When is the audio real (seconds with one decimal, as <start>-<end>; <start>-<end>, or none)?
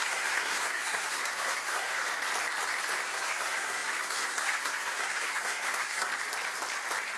2.0-3.1; 6.1-7.2